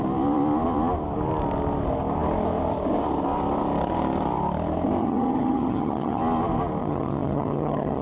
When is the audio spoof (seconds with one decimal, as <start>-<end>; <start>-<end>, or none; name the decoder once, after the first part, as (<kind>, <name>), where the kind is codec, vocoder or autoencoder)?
5.0-6.2 (vocoder, HiFi-GAN); 6.8-8.0